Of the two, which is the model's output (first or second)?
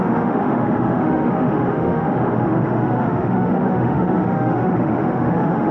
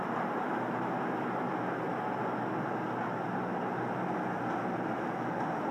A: first